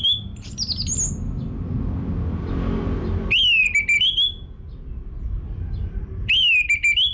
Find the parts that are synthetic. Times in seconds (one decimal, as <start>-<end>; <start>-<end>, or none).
none